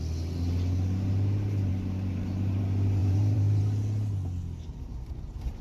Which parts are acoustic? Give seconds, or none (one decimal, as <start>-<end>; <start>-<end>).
0.0-1.7; 2.6-3.0; 3.6-5.6